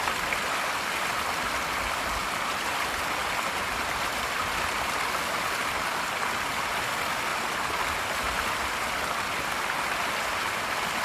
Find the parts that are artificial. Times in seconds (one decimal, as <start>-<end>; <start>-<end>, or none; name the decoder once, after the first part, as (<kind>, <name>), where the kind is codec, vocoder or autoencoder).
3.2-5.9 (vocoder, BigVGAN v2)